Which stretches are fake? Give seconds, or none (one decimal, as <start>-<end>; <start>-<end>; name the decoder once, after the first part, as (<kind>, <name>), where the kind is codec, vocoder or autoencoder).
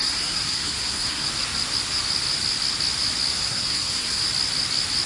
0.0-1.3 (codec, SNAC); 3.3-4.2